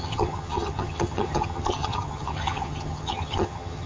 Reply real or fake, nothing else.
fake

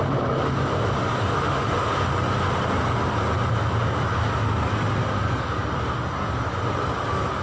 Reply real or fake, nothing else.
real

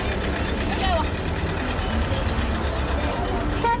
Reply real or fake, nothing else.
real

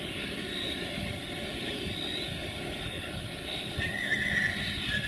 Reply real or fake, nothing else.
real